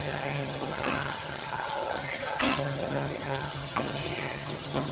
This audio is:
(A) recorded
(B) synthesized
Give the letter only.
B